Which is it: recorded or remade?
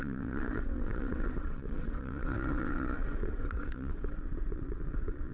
remade